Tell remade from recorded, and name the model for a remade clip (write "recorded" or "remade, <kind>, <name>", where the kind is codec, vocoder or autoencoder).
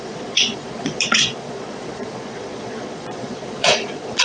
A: remade, vocoder, Vocos